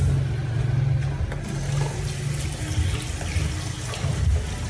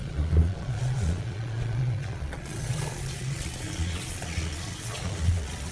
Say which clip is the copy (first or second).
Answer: second